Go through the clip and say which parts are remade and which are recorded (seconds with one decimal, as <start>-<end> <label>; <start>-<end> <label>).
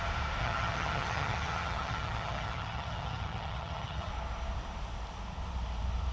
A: 0.0-0.4 recorded; 0.4-4.1 remade; 4.1-6.1 recorded